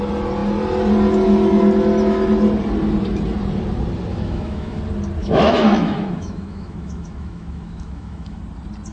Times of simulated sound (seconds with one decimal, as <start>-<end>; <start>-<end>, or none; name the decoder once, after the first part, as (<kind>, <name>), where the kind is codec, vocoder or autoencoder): 4.1-4.8 (autoencoder, DAC-VAE); 5.2-8.4